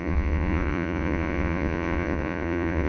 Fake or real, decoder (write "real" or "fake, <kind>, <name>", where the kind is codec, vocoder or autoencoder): fake, vocoder, Vocos